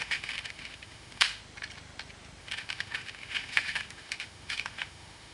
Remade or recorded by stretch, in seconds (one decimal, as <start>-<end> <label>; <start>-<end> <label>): 0.0-1.4 remade; 1.4-2.4 recorded; 2.4-5.3 remade